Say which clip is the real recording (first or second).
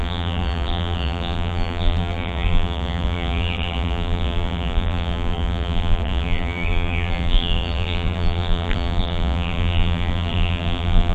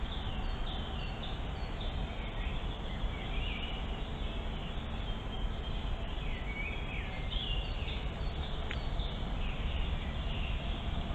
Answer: second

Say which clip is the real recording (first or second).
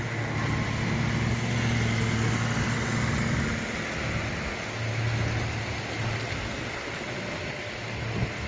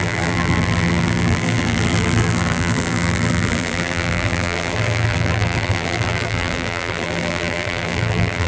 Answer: first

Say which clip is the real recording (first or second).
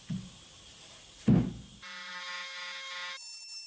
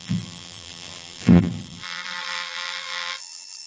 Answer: first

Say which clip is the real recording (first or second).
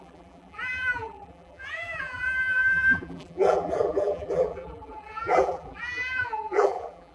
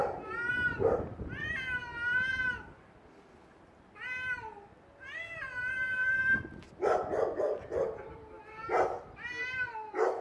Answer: second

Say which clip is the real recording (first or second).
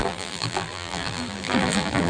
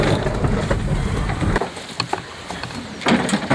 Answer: second